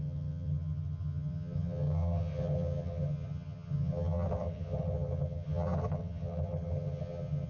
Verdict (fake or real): fake